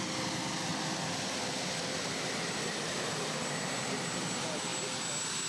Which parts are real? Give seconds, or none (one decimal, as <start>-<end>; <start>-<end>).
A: 0.0-5.5